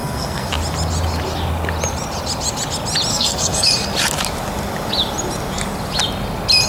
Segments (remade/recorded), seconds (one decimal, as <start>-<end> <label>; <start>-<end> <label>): 0.0-0.5 remade; 0.5-3.1 recorded; 3.1-3.7 remade; 3.7-6.7 recorded